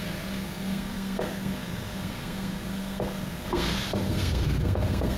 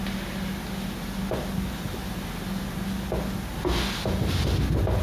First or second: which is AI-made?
first